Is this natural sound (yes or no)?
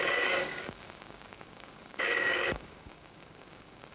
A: no